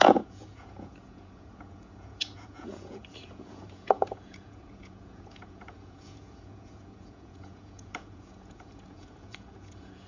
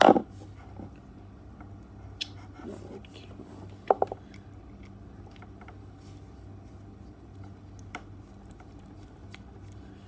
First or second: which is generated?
first